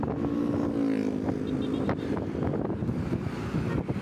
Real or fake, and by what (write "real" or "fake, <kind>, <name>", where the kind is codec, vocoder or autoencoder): real